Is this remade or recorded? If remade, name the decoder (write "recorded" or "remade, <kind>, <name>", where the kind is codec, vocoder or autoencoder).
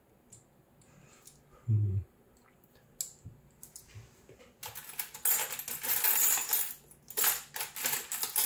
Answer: recorded